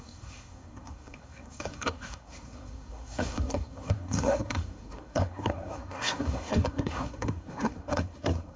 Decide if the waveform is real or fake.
fake